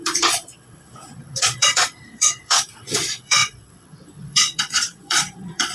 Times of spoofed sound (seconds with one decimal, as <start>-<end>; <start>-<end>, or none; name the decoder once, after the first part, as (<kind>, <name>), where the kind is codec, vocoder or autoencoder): 0.0-5.7 (vocoder, Vocos)